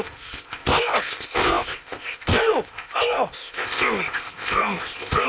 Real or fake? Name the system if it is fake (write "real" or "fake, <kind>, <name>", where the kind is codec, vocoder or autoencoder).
fake, codec, ZipCodec